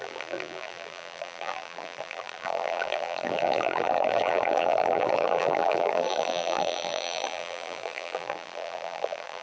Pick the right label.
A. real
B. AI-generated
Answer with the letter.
B